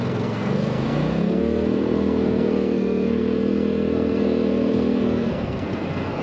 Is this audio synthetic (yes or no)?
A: yes